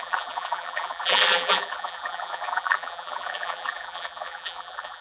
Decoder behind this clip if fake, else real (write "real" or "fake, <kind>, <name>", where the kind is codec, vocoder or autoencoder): fake, vocoder, BigVGAN v2